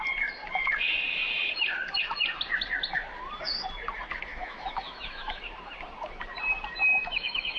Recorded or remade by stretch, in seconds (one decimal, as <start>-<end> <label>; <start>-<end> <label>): 0.0-4.3 recorded; 4.3-5.4 remade; 5.4-6.9 recorded; 6.9-7.6 remade